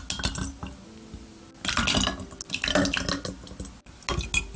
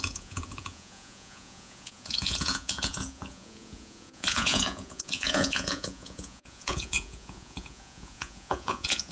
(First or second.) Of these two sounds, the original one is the first